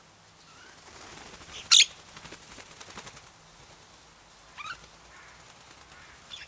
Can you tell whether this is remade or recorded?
recorded